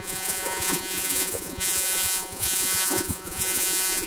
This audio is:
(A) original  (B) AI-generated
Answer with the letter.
B